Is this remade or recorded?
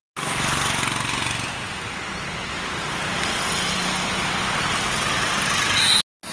recorded